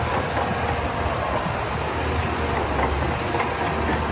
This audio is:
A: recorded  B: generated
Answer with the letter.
A